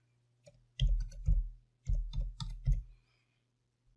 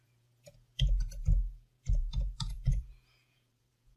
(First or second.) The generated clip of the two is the second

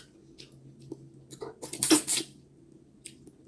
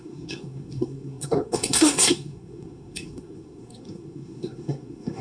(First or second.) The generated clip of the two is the second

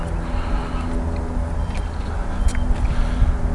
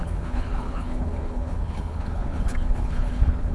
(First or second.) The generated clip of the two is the second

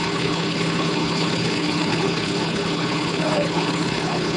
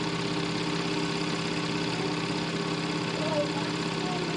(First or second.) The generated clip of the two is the first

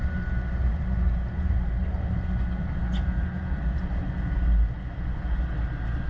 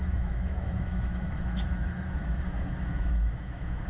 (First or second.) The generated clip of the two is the second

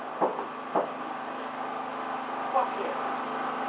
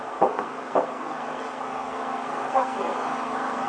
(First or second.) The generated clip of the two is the second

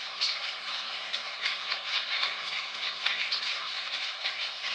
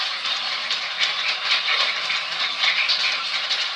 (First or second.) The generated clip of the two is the first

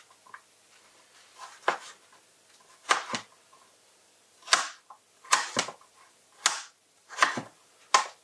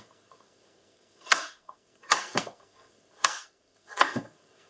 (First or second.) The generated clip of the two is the second